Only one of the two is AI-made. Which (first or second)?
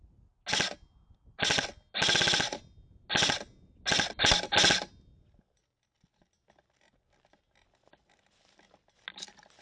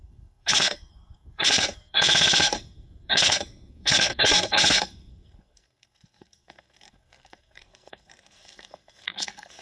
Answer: second